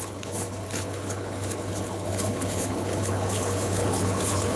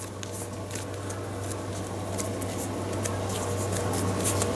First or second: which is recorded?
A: second